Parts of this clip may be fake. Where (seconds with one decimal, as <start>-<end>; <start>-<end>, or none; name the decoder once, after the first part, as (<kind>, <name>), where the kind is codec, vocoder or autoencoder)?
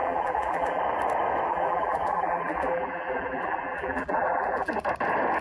0.0-0.8 (vocoder, BigVGAN v2); 1.5-4.7